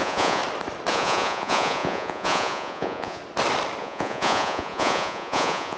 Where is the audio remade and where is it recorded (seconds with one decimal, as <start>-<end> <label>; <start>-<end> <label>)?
0.0-0.4 remade; 0.4-0.9 recorded; 0.9-3.2 remade; 3.2-3.8 recorded; 3.8-5.8 remade